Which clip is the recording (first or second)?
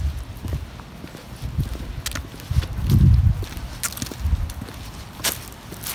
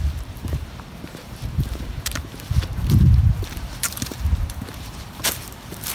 first